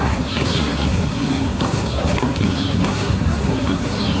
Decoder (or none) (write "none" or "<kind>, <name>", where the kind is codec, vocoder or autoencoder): codec, SNAC